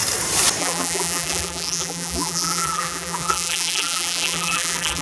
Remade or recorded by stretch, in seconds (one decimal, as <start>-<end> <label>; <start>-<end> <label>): 0.0-0.6 recorded; 0.6-5.0 remade